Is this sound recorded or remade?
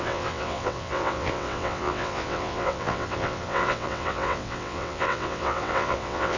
remade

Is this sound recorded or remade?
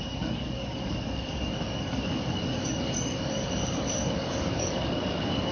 remade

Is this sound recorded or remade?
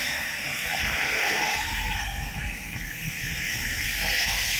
remade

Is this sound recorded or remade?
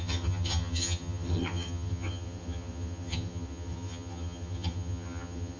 remade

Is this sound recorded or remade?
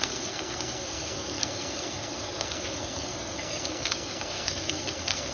remade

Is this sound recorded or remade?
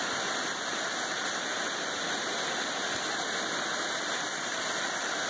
recorded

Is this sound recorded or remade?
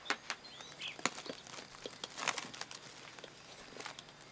recorded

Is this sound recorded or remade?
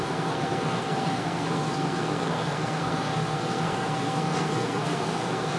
remade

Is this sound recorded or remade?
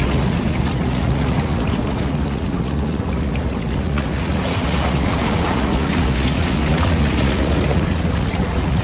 remade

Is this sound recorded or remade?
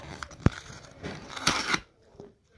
remade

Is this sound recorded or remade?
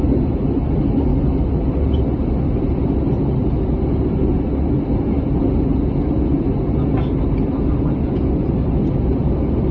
recorded